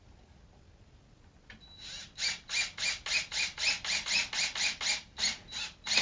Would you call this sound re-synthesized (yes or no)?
no